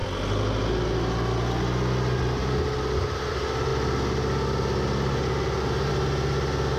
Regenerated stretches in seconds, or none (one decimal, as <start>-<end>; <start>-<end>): none